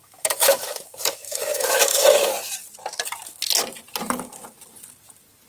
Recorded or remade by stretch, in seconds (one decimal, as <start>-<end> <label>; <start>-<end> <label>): 0.0-2.3 remade; 2.3-5.5 recorded